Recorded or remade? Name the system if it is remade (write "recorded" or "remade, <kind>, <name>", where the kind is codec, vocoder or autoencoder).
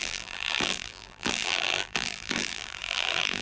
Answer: remade, vocoder, BigVGAN v2